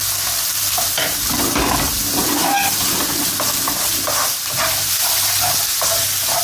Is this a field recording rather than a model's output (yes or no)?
yes